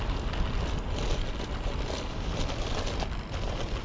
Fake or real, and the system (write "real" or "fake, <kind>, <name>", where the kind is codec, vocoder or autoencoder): real